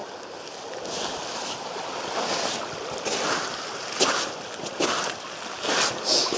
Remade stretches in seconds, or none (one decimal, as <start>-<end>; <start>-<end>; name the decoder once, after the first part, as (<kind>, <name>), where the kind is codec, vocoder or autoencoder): none